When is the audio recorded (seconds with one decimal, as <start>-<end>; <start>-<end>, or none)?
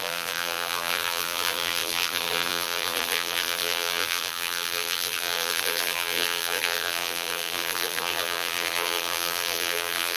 none